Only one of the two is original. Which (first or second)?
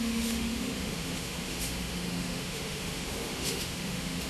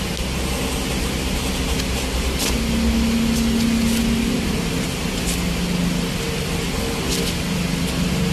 second